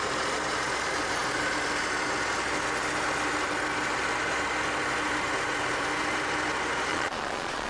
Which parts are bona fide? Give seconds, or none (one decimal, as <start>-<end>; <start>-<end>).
0.0-6.9